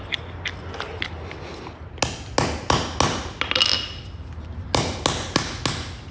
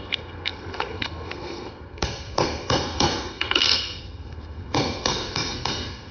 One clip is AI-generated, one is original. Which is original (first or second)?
first